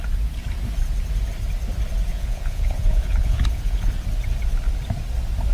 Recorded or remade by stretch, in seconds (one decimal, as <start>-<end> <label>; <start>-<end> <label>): 0.0-2.1 recorded; 2.1-3.9 remade; 3.9-5.5 recorded